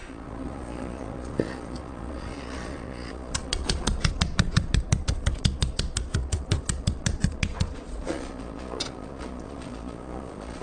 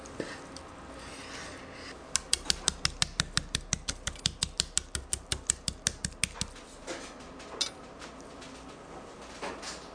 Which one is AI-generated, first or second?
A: first